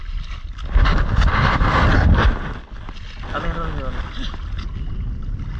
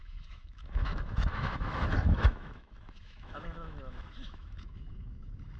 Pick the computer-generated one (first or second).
second